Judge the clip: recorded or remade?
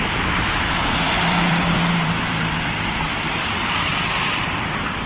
remade